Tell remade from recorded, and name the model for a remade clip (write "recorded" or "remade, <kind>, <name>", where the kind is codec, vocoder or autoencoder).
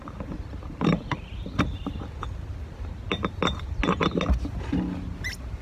recorded